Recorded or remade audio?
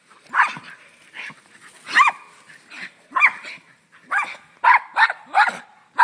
recorded